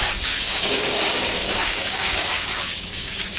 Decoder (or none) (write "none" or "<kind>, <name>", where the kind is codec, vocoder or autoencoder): codec, DAC